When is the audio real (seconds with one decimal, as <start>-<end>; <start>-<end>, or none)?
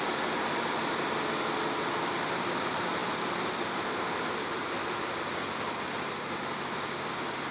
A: 0.0-7.5